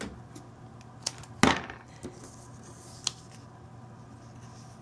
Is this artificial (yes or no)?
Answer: no